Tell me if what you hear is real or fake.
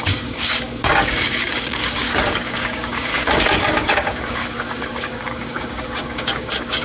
fake